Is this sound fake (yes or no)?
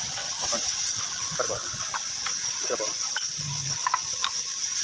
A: no